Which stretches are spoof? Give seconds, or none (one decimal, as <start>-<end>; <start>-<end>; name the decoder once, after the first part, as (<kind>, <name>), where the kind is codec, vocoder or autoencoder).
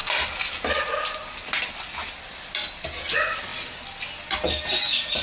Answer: none